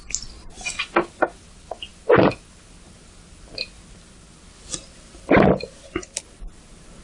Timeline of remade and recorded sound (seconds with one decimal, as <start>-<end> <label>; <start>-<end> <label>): 0.0-7.0 recorded